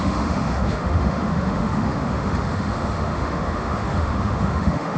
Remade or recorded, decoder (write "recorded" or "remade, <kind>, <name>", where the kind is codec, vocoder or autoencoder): remade, autoencoder, DAC-VAE